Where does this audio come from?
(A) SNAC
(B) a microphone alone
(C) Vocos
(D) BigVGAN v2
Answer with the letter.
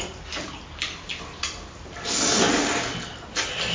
B